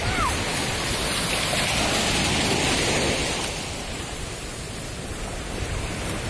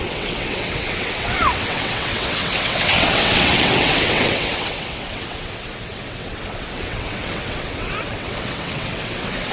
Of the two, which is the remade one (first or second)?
second